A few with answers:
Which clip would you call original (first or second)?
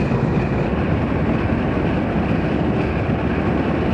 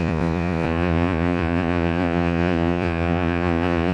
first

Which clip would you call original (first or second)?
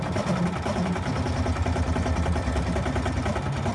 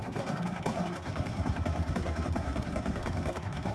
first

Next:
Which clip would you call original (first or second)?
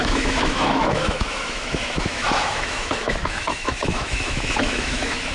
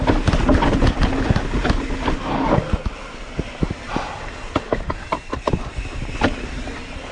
second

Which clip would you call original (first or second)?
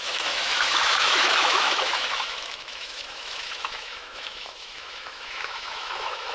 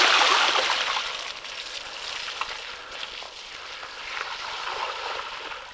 second